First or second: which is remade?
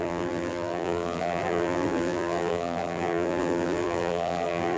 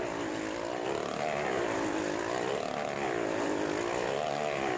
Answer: first